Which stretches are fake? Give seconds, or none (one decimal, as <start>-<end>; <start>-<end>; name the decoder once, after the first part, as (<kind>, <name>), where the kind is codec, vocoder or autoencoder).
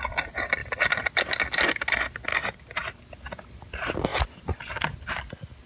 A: none